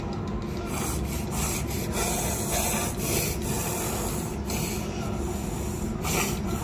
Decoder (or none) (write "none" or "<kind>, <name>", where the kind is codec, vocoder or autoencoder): none